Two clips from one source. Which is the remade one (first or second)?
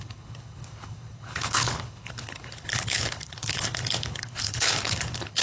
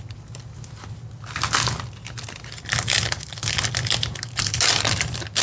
first